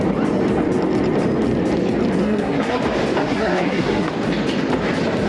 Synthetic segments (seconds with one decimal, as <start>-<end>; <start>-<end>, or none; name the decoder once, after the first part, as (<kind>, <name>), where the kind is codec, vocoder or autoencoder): 2.2-2.8 (codec, SNAC); 3.2-4.1